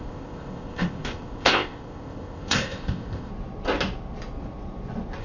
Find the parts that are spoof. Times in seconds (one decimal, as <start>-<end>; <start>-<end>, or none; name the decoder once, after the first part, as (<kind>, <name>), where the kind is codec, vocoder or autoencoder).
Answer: 0.0-3.3 (codec, ZipCodec)